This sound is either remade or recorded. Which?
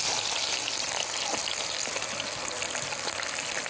recorded